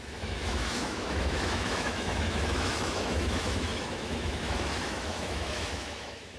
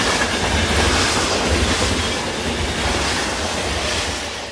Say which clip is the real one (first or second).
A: second